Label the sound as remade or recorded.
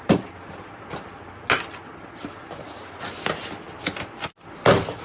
recorded